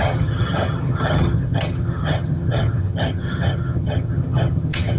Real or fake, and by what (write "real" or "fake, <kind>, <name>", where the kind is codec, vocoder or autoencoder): fake, vocoder, HiFi-GAN